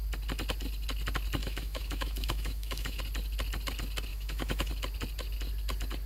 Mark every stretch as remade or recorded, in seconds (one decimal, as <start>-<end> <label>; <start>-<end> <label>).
0.0-1.4 recorded; 1.4-3.0 remade; 3.0-4.1 recorded; 4.1-4.7 remade; 4.7-6.1 recorded